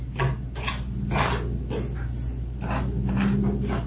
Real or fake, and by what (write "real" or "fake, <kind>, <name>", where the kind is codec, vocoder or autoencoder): real